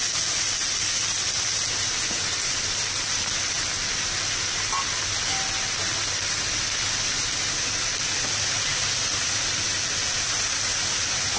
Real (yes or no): yes